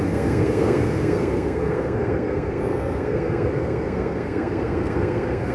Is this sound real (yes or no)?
no